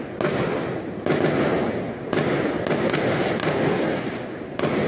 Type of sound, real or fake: real